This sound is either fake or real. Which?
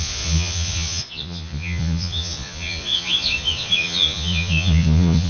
fake